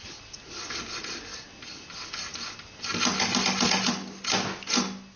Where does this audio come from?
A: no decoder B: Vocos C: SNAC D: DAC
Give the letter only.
A